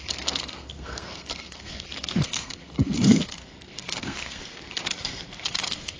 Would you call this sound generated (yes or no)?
yes